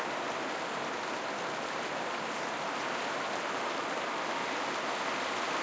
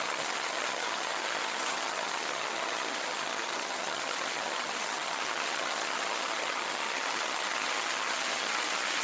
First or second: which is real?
first